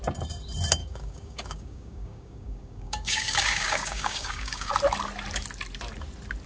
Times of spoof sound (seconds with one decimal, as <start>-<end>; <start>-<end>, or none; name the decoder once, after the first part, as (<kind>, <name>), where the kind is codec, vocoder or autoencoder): 0.8-4.7 (codec, DAC)